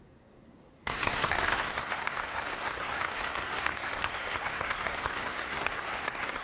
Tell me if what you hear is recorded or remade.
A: remade